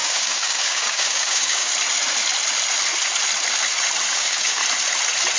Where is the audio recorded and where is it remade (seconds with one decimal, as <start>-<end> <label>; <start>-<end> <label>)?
0.0-1.7 remade; 1.7-4.1 recorded; 4.1-4.6 remade; 4.6-5.4 recorded